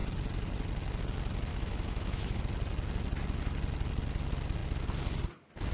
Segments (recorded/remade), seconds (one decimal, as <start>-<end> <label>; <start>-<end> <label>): 0.0-1.5 recorded; 1.5-2.4 remade; 2.4-5.7 recorded